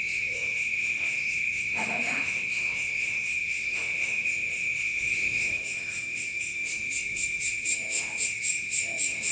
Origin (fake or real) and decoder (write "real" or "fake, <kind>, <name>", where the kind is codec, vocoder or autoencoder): fake, autoencoder, DAC-VAE